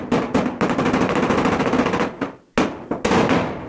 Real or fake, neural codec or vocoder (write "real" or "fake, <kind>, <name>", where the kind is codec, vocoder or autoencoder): real